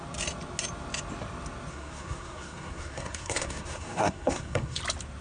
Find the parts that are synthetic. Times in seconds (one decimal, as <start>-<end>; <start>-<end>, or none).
1.7-4.8

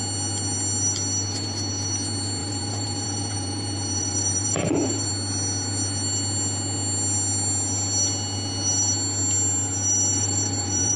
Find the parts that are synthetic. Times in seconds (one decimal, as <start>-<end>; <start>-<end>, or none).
2.4-5.1; 10.1-11.0